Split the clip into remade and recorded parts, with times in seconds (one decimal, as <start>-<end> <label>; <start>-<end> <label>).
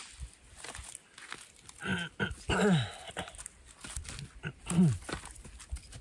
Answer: 0.0-6.0 recorded